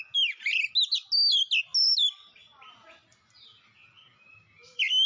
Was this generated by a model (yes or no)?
no